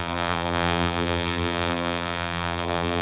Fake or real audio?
fake